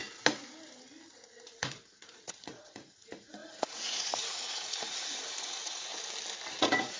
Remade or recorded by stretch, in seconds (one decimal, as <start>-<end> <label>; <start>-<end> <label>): 0.0-1.6 recorded; 1.6-5.9 remade; 5.9-6.6 recorded; 6.6-7.0 remade